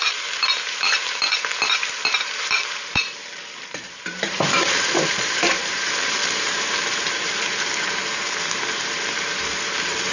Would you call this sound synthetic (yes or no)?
yes